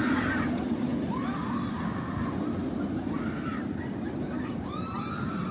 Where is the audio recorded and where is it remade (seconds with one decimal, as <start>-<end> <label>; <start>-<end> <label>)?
0.0-0.9 remade; 0.9-4.2 recorded; 4.2-5.5 remade

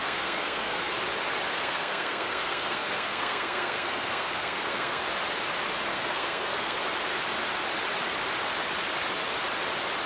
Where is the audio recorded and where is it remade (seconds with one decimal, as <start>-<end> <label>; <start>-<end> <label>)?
0.0-0.9 remade; 0.9-1.5 recorded; 1.5-5.0 remade; 5.0-5.9 recorded; 5.9-6.8 remade; 6.8-10.1 recorded

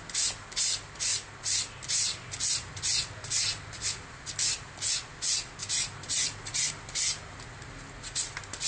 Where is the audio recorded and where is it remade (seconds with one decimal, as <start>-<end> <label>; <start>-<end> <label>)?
0.0-8.7 recorded

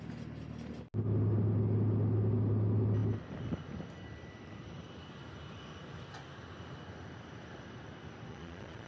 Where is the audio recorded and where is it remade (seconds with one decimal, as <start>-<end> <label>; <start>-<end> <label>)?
0.0-8.3 recorded; 8.3-8.9 remade

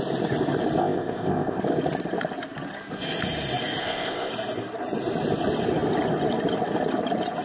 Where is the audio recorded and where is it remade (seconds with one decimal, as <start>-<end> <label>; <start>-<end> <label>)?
0.0-0.8 recorded; 0.8-1.6 remade; 1.6-3.8 recorded; 3.8-4.3 remade; 4.3-7.4 recorded

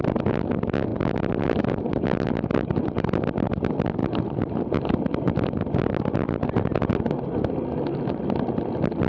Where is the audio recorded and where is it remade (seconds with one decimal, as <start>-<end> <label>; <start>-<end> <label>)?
0.0-9.1 recorded

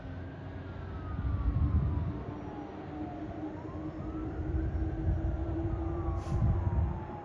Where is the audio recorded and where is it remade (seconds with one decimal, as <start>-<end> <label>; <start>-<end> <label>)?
0.0-4.2 recorded; 4.2-6.6 remade; 6.6-7.2 recorded

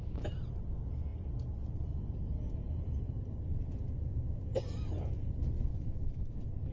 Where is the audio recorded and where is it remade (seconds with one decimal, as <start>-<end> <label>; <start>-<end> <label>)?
0.0-5.7 recorded; 5.7-6.3 remade; 6.3-6.7 recorded